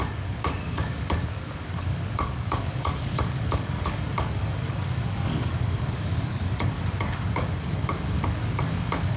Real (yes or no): no